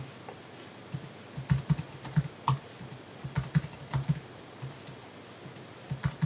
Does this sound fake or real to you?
real